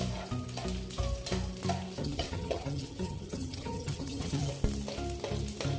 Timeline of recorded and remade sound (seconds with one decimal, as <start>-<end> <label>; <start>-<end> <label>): 0.0-2.0 recorded; 2.0-4.5 remade; 4.5-5.8 recorded